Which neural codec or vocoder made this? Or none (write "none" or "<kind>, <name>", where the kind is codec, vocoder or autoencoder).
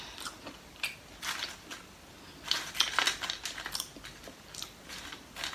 none